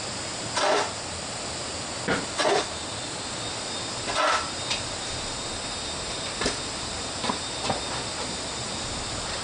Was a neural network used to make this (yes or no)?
no